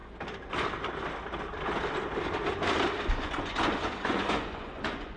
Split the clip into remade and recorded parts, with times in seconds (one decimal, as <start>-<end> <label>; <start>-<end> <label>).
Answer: 0.0-3.1 recorded; 3.1-5.2 remade